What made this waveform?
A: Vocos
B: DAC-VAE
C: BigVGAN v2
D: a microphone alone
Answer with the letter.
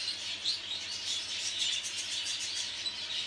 D